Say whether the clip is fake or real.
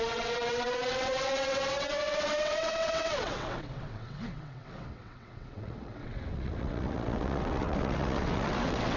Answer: fake